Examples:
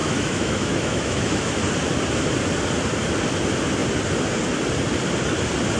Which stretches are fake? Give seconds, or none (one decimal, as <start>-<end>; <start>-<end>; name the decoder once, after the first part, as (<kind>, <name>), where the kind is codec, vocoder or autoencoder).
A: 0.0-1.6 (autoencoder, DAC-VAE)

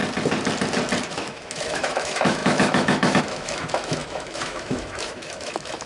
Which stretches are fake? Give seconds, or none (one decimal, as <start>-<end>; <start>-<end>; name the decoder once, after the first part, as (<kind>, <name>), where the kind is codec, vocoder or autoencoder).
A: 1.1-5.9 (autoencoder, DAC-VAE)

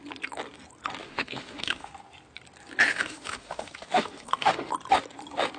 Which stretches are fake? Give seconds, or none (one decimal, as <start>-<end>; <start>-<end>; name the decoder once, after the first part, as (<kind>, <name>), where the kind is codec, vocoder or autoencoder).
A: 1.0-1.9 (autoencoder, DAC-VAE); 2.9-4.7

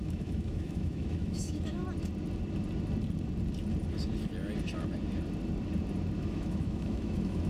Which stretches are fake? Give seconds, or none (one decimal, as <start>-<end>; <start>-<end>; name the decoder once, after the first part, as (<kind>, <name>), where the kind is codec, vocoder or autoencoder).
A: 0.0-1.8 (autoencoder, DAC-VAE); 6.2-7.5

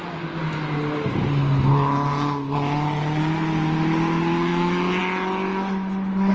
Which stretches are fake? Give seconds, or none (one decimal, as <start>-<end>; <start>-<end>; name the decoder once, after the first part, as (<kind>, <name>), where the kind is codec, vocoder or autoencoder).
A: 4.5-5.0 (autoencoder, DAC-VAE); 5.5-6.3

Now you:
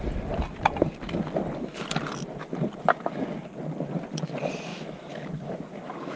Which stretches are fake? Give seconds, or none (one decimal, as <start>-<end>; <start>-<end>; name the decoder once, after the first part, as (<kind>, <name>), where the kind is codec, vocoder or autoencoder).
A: 4.7-6.2 (autoencoder, DAC-VAE)

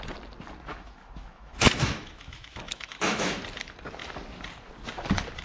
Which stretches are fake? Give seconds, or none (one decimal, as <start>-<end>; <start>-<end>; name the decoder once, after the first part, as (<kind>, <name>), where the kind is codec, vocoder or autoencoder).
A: 0.7-3.4 (autoencoder, DAC-VAE)

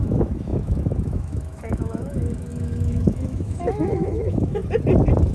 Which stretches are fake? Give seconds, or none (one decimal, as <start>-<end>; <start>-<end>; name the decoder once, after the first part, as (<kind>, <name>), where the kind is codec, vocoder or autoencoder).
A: 0.0-4.6 (autoencoder, DAC-VAE)